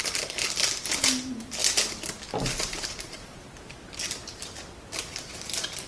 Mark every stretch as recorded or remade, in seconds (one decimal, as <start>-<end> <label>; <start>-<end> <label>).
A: 0.0-5.9 recorded